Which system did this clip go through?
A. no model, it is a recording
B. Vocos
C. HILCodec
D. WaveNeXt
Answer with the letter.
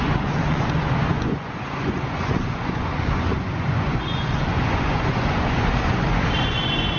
B